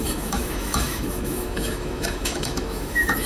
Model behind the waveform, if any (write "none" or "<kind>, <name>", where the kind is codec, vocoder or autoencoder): autoencoder, DAC-VAE